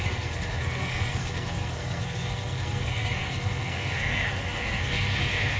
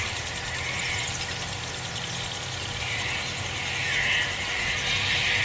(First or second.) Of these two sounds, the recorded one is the second